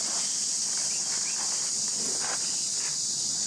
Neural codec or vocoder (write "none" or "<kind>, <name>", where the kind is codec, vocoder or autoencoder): none